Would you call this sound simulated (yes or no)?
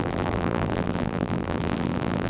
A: yes